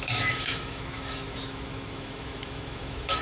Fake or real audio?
fake